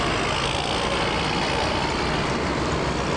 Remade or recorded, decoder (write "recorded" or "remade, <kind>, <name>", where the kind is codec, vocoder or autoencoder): recorded